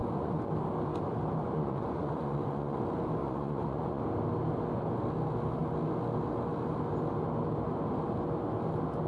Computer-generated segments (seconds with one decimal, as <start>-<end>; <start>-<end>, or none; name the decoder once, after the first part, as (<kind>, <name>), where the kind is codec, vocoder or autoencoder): 0.0-0.5 (vocoder, Vocos); 1.4-2.8; 3.2-4.0